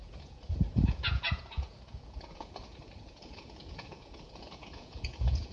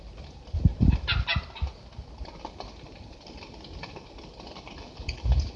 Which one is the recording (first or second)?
second